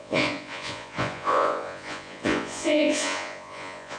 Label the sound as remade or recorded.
remade